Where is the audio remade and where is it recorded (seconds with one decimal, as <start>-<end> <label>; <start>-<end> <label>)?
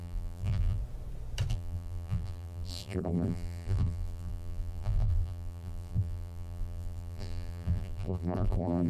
0.0-0.8 remade; 0.8-1.5 recorded; 1.5-8.9 remade